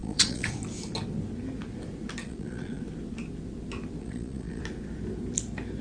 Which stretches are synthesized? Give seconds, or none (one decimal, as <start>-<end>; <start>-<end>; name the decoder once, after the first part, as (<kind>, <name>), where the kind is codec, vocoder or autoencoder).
0.0-0.5 (vocoder, Vocos); 2.2-2.8; 4.0-4.6